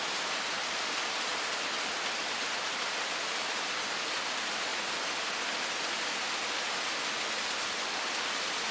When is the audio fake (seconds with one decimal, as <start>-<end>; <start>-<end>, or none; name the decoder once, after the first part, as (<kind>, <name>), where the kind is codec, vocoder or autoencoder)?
none